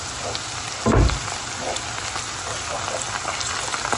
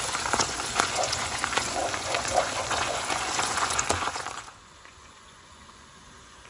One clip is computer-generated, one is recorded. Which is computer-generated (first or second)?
second